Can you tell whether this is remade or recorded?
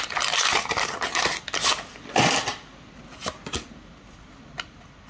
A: recorded